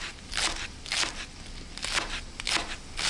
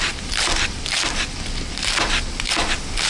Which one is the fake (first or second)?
second